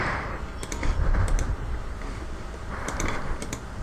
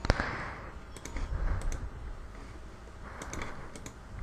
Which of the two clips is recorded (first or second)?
second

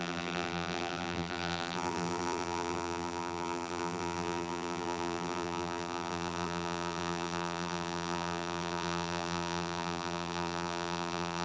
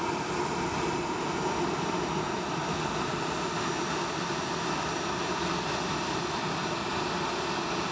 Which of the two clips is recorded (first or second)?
second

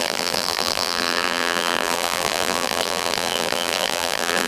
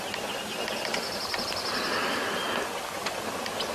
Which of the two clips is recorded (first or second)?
second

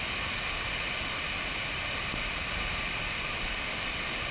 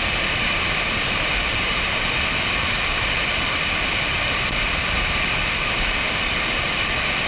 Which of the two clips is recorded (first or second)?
first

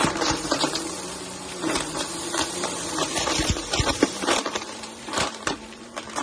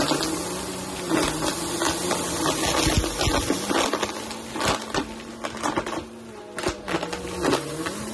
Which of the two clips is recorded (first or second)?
second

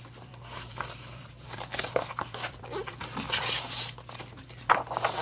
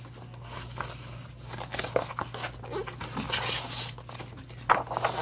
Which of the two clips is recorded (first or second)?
second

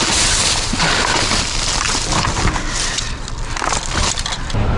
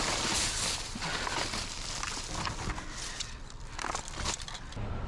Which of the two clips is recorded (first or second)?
second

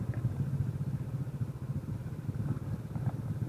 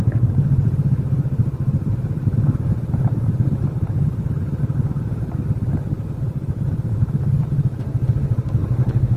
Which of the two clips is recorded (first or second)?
first